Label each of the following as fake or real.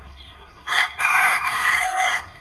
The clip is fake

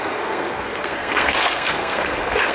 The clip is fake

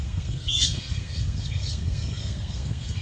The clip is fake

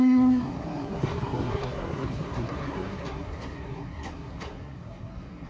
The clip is fake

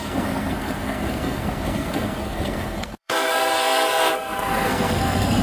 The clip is fake